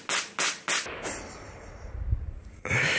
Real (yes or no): yes